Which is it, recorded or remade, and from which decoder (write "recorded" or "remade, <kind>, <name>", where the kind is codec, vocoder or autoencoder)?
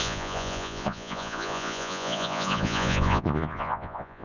remade, vocoder, Vocos